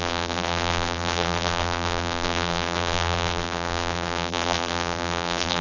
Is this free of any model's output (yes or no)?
no